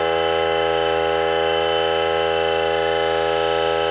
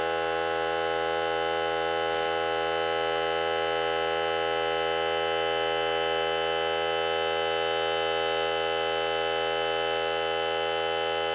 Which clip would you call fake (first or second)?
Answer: first